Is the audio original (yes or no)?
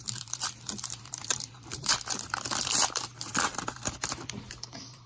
no